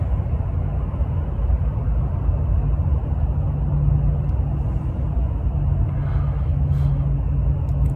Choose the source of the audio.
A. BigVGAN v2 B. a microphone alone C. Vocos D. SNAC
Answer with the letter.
B